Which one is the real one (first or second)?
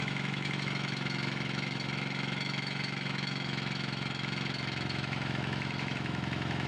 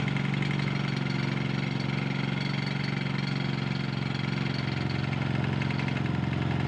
second